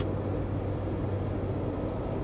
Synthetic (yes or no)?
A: no